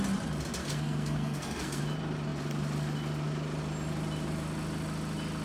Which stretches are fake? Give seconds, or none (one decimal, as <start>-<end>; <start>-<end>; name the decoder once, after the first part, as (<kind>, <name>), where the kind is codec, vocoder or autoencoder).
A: 0.6-1.8 (codec, SNAC)